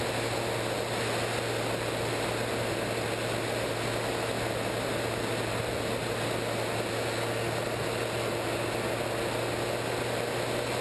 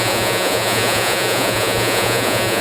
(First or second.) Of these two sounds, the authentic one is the first